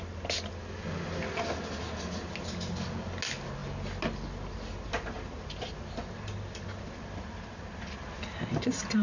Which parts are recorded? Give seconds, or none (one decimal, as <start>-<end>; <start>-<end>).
0.0-9.0

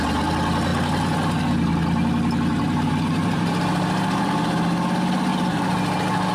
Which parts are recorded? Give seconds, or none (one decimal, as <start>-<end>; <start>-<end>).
0.0-2.5; 3.6-5.3

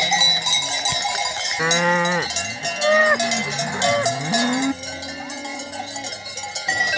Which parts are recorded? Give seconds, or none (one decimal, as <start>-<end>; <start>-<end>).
0.0-7.0

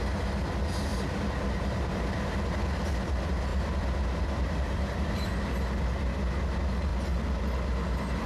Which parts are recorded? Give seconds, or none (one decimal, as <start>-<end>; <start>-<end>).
0.0-0.9; 2.3-3.5; 5.3-8.3

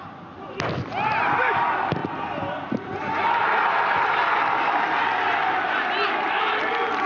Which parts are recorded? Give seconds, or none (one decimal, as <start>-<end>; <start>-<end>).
0.0-7.1